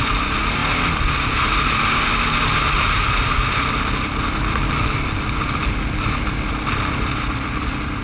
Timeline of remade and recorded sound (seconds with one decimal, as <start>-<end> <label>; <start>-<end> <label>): 0.0-8.0 recorded

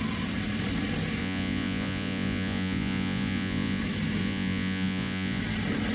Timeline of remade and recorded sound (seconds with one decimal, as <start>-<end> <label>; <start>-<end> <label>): 0.0-1.2 recorded; 1.2-3.8 remade; 3.8-4.2 recorded; 4.2-5.4 remade; 5.4-5.9 recorded

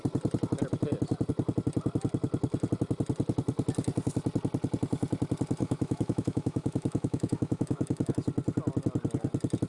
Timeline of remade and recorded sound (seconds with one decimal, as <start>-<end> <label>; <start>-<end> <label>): 0.0-5.6 recorded; 5.6-8.1 remade; 8.1-9.7 recorded

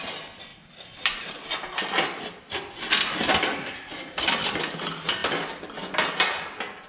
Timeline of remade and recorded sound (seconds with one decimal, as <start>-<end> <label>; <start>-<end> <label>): 0.0-5.2 recorded; 5.2-6.1 remade; 6.1-6.9 recorded

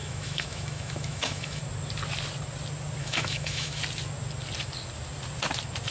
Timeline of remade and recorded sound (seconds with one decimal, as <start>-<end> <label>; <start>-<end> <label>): 0.0-1.6 remade; 1.6-3.0 recorded; 3.0-3.8 remade; 3.8-5.9 recorded